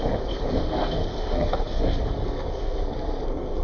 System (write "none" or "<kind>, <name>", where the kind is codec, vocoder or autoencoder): codec, SNAC